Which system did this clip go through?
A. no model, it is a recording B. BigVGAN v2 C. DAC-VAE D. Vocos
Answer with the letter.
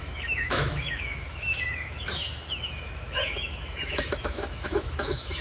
C